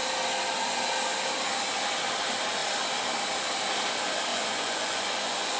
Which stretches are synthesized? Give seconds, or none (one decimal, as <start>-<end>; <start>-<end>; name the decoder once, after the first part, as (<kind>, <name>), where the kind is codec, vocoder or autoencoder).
4.3-5.6 (vocoder, Vocos)